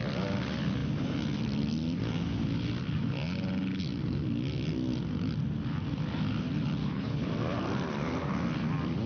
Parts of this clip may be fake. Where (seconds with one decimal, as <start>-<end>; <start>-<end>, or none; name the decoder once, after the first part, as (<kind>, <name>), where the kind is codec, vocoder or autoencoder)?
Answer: 6.8-7.3 (codec, HILCodec)